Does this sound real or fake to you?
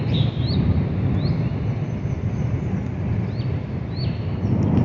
real